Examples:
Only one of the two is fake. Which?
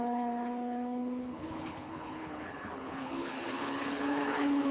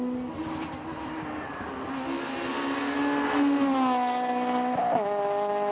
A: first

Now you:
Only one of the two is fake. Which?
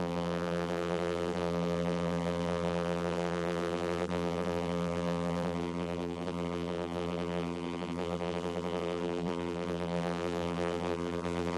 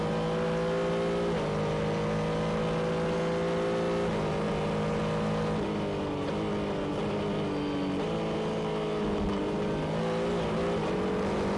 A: first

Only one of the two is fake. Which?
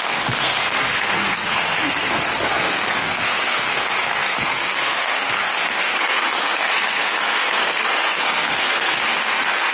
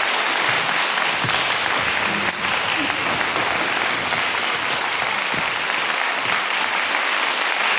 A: first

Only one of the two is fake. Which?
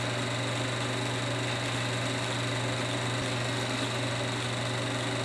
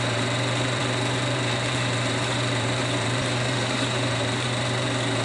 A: second